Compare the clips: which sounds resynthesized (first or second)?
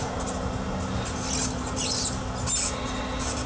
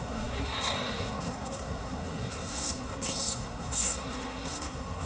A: second